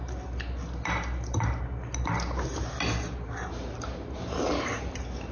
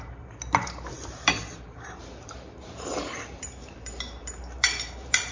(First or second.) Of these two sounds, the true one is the first